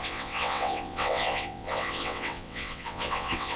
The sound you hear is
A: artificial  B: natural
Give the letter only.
A